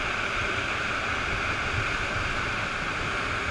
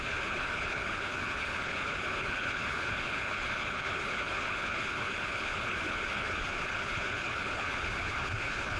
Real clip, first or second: first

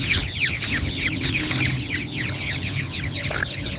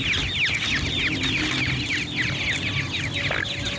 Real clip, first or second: second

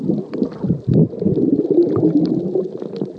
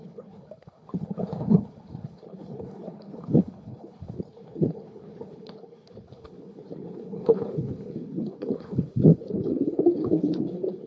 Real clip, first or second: first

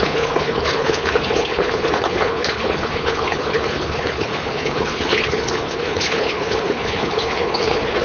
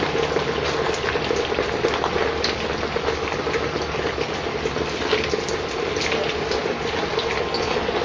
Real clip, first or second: second